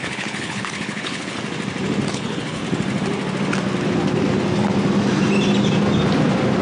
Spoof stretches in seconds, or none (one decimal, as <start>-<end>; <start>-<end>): 0.0-1.4; 2.1-2.6